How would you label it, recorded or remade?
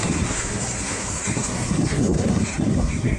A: remade